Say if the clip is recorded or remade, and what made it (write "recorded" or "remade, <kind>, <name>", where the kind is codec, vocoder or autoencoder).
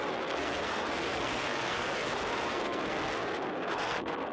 remade, codec, SNAC